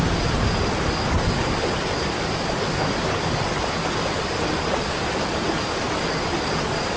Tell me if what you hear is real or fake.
real